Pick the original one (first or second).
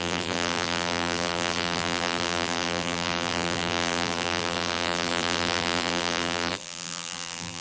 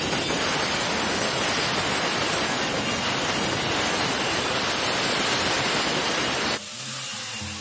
second